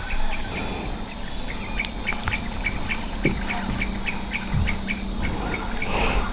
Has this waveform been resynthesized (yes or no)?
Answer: no